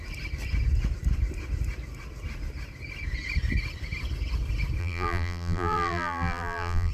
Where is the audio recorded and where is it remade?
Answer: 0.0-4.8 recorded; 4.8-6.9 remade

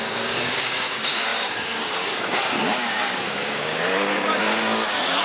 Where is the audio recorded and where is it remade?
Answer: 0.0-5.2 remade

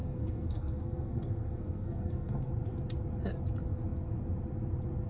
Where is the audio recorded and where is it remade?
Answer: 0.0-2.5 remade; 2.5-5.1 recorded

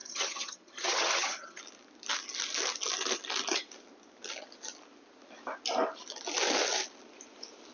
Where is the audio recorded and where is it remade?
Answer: 0.0-1.6 remade; 1.6-7.7 recorded

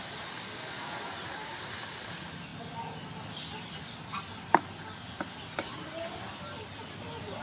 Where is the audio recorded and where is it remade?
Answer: 0.0-7.4 recorded

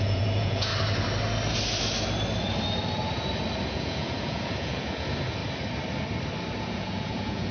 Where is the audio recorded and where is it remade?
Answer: 0.0-0.7 remade; 0.7-3.7 recorded; 3.7-5.4 remade; 5.4-6.6 recorded; 6.6-7.5 remade

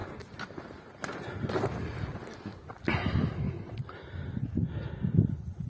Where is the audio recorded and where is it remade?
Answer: 0.0-5.7 recorded

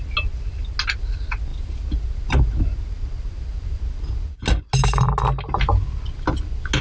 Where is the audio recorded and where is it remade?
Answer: 0.0-6.8 recorded